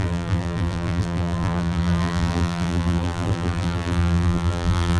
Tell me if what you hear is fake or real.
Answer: fake